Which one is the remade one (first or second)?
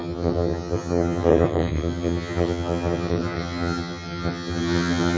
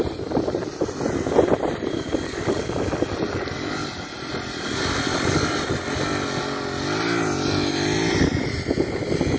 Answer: first